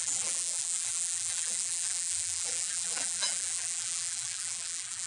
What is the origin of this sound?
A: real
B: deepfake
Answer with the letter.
B